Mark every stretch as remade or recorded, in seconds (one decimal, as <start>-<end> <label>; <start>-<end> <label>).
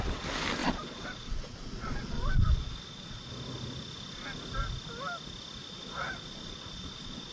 0.0-0.6 recorded; 0.6-3.3 remade; 3.3-5.6 recorded; 5.6-7.3 remade